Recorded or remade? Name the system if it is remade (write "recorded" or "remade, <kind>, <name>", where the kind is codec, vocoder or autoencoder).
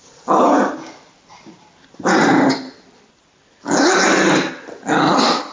recorded